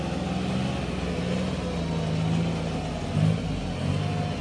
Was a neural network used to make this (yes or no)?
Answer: no